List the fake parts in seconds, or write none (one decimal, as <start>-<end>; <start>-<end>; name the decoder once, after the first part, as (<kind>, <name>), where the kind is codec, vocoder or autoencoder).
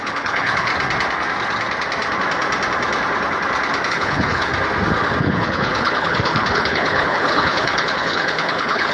0.0-0.7 (codec, HILCodec); 3.9-4.5; 5.2-8.9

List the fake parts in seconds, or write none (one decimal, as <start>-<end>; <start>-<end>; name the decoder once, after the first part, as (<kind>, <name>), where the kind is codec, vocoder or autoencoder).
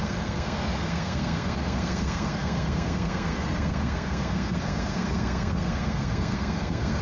0.0-7.0 (codec, SNAC)